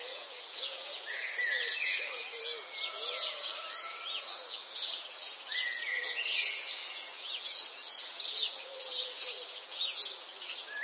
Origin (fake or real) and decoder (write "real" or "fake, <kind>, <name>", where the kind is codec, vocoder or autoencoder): fake, vocoder, BigVGAN v2